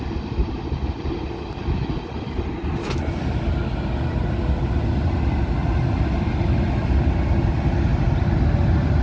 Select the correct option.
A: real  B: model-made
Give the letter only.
A